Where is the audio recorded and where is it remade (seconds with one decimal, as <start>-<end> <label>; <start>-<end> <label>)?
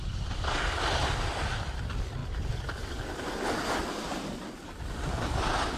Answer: 0.0-5.8 recorded